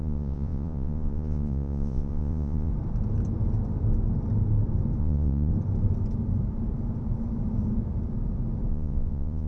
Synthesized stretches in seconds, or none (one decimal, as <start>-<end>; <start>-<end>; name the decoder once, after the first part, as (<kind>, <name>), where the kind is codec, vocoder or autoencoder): 0.0-2.7 (vocoder, Vocos); 5.0-5.5; 8.7-9.5